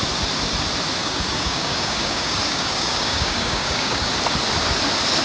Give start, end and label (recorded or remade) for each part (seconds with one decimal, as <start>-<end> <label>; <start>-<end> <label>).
0.0-1.0 recorded; 1.0-4.1 remade; 4.1-5.2 recorded